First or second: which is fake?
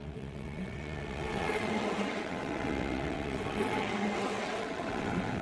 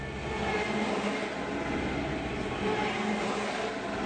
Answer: first